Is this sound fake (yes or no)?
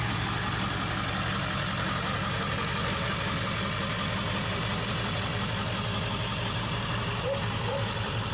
no